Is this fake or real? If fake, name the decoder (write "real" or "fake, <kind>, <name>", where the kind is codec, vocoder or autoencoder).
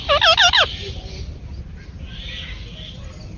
real